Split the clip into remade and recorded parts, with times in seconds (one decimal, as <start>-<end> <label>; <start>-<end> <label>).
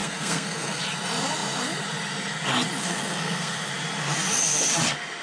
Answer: 0.0-0.8 remade; 0.8-2.8 recorded; 2.8-3.7 remade; 3.7-5.2 recorded